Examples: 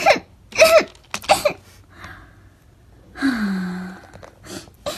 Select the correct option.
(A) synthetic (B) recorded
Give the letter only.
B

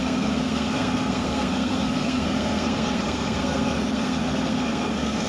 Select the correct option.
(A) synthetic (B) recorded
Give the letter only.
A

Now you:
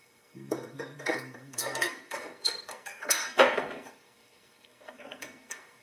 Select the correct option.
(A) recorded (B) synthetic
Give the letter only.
B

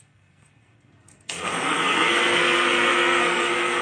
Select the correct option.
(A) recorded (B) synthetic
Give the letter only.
B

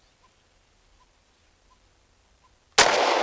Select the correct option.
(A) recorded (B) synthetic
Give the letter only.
A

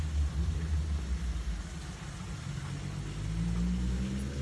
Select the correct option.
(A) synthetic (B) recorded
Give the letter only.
B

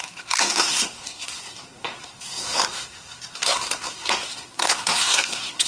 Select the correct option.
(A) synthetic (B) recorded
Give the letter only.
A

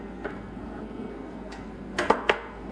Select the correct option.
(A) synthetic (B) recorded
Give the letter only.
A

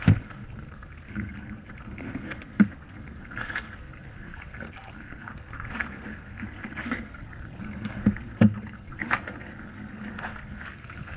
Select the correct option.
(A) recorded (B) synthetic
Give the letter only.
B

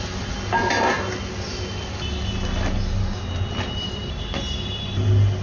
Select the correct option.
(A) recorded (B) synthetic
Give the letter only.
A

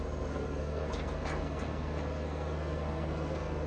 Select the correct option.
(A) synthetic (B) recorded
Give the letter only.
A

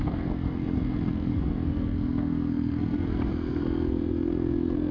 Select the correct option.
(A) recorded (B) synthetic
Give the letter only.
B